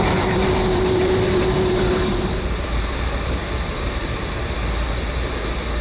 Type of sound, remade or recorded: remade